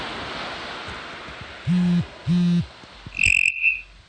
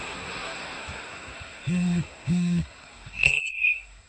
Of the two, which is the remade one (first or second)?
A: second